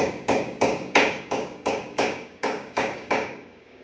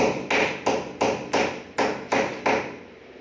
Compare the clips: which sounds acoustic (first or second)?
second